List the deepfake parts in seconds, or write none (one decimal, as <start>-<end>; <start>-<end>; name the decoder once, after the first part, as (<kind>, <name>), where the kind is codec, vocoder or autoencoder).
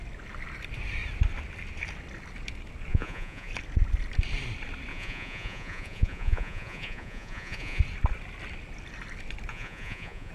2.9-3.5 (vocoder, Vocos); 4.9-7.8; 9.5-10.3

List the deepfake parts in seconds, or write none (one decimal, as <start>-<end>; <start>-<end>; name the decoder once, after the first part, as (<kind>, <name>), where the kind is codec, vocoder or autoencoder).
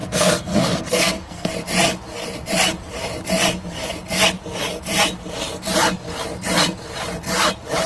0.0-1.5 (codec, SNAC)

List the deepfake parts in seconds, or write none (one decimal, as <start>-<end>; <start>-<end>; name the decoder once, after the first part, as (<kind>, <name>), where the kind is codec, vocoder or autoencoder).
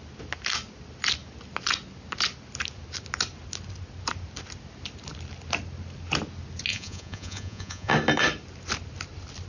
6.7-7.9 (vocoder, Vocos)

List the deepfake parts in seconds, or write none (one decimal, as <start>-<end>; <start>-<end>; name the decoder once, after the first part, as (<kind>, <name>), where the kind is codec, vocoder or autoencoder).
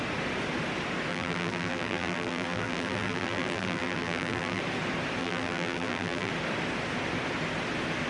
1.1-4.6 (vocoder, BigVGAN v2); 5.2-6.3